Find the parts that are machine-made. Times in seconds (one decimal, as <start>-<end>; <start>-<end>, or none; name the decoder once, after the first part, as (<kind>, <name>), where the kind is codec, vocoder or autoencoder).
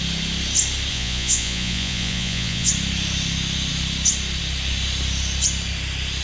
0.9-2.7 (vocoder, Vocos)